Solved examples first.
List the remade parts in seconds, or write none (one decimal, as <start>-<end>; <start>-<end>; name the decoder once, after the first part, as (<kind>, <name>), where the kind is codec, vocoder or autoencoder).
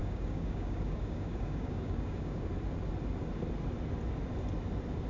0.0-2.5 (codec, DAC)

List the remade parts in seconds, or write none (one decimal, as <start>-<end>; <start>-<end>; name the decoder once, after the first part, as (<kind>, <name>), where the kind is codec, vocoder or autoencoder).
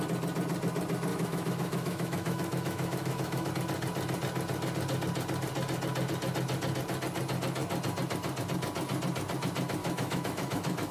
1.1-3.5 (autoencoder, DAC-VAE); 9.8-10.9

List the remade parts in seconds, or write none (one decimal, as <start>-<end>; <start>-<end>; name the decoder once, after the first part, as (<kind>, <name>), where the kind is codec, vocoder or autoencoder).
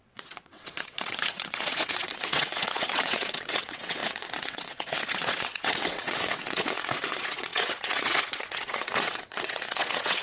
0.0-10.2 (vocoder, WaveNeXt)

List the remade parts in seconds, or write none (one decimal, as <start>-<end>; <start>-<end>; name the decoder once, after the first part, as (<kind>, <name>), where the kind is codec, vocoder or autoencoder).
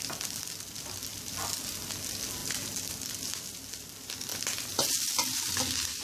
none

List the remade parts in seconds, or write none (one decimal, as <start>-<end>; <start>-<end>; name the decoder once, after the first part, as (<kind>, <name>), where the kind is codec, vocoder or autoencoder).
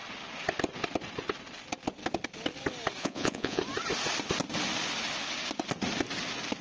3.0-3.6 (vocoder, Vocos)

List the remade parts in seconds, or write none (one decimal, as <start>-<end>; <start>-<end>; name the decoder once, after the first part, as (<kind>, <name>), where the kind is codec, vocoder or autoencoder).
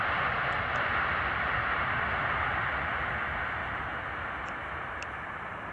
none